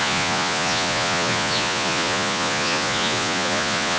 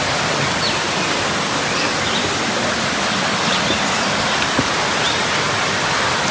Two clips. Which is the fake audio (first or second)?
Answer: first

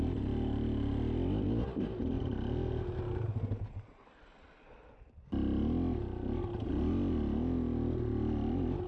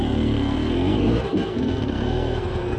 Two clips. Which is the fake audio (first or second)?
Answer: second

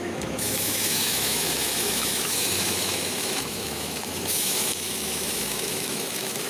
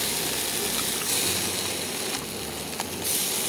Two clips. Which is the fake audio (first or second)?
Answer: first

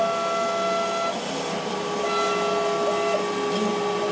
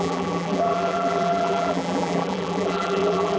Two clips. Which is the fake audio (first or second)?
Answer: second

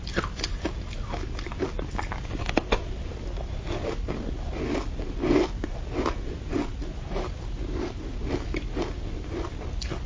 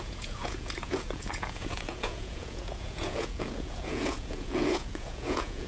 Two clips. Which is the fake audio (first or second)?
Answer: second